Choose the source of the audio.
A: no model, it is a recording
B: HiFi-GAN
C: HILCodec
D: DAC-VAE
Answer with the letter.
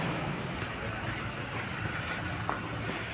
A